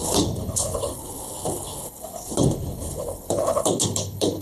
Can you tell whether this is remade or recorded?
remade